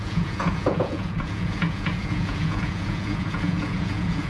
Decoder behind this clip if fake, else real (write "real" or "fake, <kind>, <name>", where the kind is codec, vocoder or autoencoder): fake, vocoder, Vocos